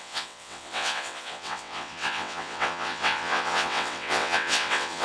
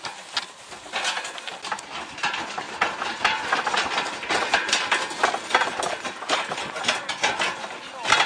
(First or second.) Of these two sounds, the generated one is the first